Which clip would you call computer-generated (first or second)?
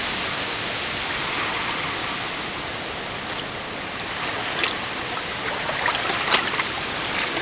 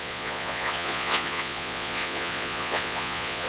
second